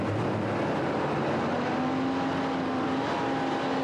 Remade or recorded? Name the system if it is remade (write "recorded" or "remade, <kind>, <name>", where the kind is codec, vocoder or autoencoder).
recorded